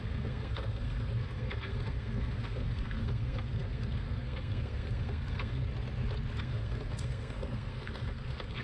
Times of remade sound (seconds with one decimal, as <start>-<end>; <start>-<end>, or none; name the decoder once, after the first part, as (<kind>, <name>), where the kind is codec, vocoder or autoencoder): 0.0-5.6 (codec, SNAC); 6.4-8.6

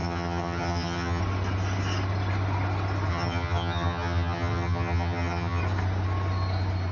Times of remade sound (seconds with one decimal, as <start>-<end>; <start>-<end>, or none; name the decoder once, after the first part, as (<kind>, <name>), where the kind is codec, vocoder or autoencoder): 0.0-1.2 (vocoder, HiFi-GAN); 3.1-5.6

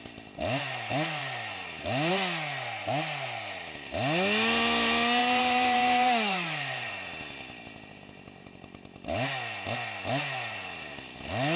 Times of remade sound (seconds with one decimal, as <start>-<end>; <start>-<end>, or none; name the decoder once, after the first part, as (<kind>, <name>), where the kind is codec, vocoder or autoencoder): 0.6-2.1 (vocoder, BigVGAN v2); 5.2-6.9

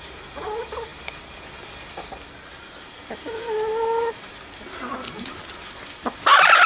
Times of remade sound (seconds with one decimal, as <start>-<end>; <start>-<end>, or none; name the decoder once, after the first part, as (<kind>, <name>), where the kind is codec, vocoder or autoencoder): none